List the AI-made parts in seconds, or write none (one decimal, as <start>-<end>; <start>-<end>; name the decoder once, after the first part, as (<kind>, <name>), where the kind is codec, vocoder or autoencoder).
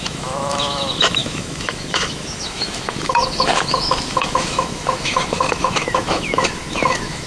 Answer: 0.0-7.3 (autoencoder, DAC-VAE)